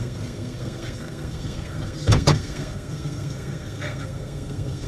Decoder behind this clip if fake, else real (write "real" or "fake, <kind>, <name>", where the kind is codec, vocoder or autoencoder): fake, codec, SNAC